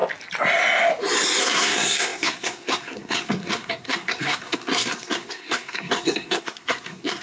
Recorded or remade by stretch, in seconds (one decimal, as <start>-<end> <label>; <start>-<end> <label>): 0.0-1.4 recorded; 1.4-7.2 remade

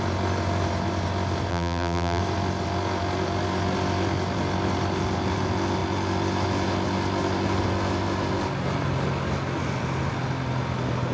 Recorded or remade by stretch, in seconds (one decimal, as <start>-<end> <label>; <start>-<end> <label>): 0.0-1.5 recorded; 1.5-2.2 remade; 2.2-11.1 recorded

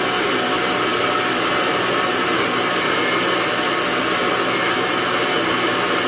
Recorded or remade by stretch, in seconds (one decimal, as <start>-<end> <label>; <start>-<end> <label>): 0.0-6.1 recorded